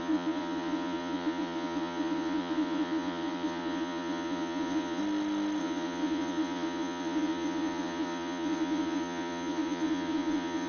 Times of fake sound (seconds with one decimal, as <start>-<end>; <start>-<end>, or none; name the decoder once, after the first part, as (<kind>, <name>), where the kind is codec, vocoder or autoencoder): 0.0-5.0 (vocoder, Vocos); 5.6-10.7